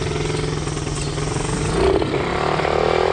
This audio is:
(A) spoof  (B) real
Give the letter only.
B